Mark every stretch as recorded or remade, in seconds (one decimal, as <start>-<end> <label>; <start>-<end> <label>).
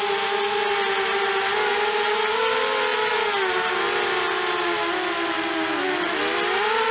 0.0-6.9 recorded